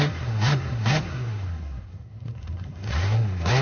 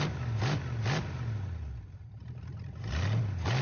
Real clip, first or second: second